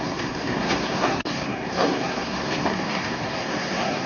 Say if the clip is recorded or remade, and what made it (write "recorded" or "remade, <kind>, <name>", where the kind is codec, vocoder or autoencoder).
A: remade, codec, SNAC